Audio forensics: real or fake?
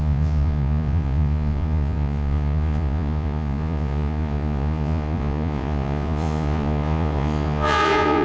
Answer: fake